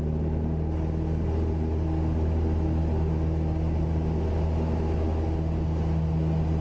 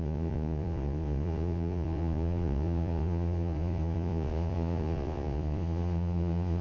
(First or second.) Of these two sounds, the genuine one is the first